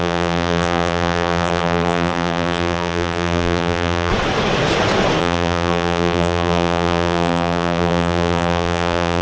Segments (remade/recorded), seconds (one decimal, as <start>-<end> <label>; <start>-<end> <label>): 0.0-4.1 remade; 4.1-5.2 recorded; 5.2-9.2 remade